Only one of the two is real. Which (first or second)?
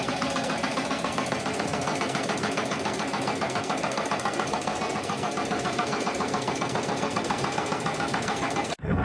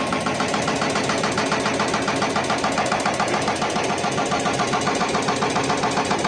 second